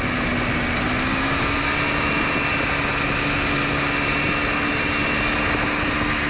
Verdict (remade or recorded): recorded